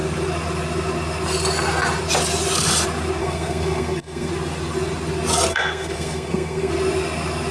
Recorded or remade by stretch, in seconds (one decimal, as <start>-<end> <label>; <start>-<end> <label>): 0.0-3.2 recorded; 3.2-4.3 remade; 4.3-5.5 recorded; 5.5-6.7 remade; 6.7-7.5 recorded